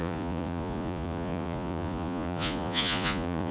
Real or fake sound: fake